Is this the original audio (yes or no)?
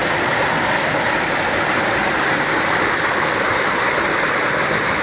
yes